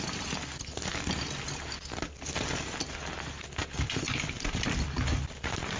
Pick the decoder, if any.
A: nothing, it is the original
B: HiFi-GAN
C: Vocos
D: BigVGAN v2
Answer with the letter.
A